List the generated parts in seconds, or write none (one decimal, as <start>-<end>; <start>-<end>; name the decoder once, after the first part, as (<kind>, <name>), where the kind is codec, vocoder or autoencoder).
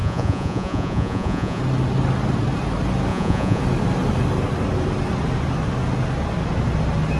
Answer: 0.0-1.6 (vocoder, Vocos); 3.1-3.6